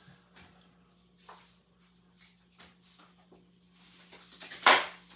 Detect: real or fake real